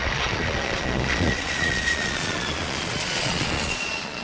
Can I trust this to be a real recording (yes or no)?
no